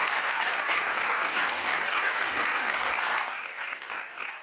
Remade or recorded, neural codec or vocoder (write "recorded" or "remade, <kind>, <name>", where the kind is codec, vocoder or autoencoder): remade, codec, DAC